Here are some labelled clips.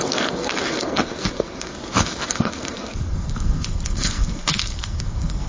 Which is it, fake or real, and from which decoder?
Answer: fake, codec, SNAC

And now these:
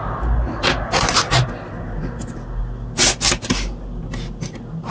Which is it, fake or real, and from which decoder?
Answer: real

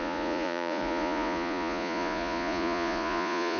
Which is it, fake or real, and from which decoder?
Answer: fake, vocoder, Vocos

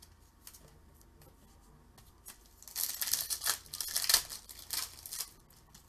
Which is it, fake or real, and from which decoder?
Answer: real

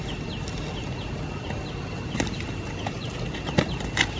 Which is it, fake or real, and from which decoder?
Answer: real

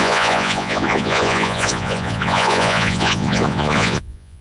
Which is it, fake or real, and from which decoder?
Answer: fake, vocoder, Vocos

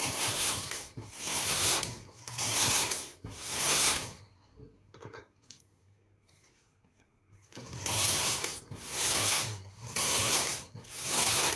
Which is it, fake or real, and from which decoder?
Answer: fake, codec, SNAC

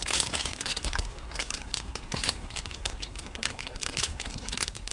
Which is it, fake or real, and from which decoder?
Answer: fake, codec, SNAC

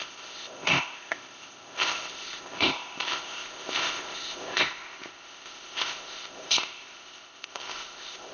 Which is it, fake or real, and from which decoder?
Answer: fake, codec, ZipCodec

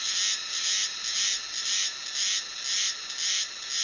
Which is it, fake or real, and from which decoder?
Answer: real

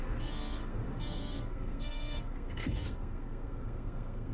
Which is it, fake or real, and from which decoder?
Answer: fake, codec, SNAC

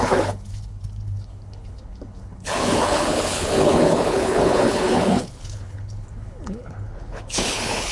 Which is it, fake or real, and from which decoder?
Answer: fake, codec, HILCodec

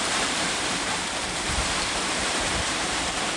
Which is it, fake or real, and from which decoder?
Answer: fake, vocoder, BigVGAN v2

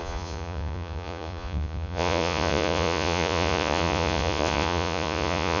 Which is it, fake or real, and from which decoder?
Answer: fake, vocoder, Vocos